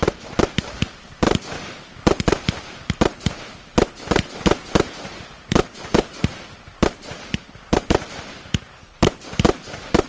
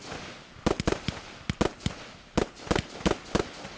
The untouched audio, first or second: second